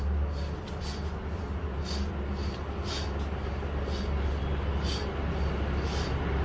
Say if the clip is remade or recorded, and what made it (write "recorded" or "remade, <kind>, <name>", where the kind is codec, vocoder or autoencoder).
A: recorded